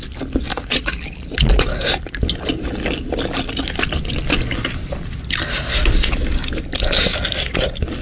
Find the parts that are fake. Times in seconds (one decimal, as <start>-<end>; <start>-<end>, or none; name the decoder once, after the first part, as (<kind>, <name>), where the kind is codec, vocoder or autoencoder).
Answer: 0.5-1.0 (vocoder, Vocos)